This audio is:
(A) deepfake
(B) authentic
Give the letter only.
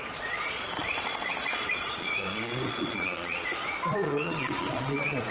A